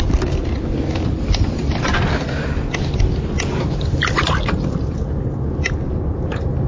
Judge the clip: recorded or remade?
recorded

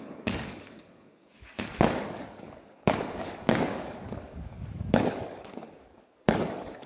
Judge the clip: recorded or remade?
remade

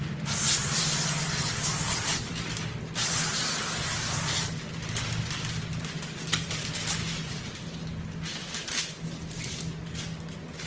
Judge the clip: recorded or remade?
recorded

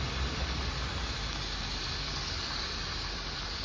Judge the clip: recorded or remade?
recorded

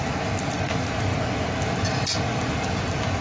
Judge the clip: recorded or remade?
recorded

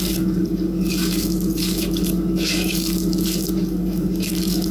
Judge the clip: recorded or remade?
remade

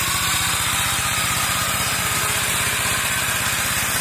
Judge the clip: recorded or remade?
recorded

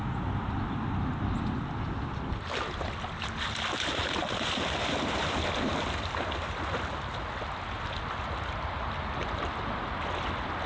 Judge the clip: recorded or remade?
recorded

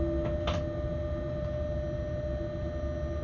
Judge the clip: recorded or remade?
recorded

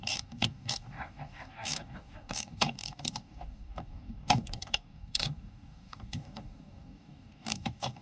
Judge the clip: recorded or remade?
remade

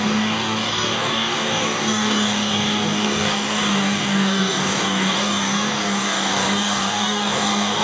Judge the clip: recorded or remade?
remade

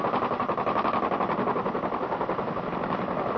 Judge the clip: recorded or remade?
recorded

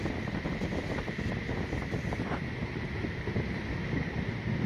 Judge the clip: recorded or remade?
recorded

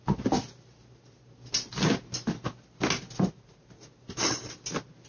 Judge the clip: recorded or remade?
recorded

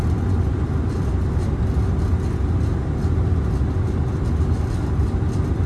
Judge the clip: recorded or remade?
recorded